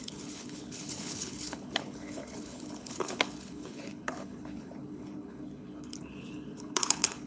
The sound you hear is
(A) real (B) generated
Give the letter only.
B